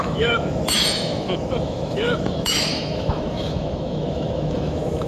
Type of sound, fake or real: fake